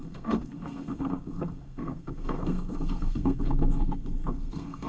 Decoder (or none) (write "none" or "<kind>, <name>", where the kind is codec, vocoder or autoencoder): codec, SNAC